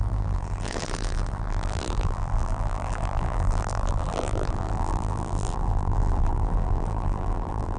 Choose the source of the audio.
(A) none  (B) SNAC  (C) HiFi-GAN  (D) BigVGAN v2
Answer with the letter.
D